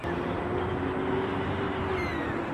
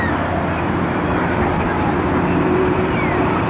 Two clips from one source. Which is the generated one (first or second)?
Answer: second